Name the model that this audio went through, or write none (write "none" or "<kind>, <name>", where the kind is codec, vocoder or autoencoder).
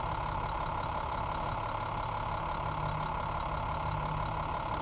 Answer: none